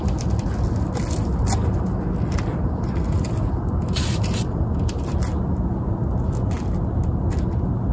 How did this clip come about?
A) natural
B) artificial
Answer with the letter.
A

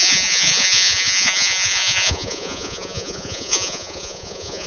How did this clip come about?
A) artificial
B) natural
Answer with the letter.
A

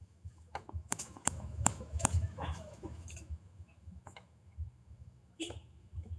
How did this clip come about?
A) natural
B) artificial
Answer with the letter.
B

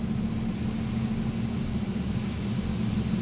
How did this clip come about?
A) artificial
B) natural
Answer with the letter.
B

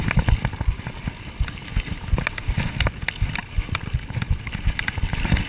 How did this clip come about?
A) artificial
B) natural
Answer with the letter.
B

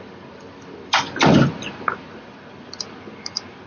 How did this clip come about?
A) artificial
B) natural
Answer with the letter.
B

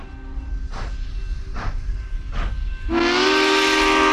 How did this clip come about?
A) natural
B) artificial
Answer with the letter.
A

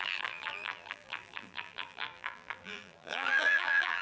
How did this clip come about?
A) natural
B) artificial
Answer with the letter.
B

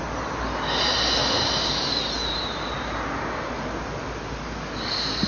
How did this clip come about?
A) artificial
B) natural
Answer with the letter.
B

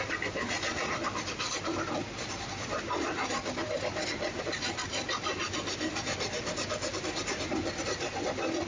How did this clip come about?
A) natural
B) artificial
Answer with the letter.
A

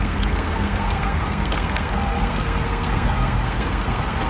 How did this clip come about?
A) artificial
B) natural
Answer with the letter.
A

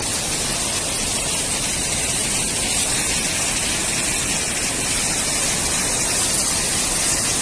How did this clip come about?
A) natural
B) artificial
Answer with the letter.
A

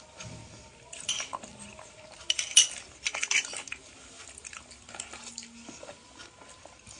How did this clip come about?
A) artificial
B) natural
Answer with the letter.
B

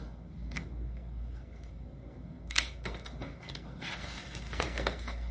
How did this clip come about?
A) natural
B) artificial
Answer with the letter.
B